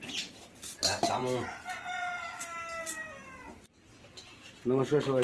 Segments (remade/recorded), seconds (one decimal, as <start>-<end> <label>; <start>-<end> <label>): 0.0-5.2 recorded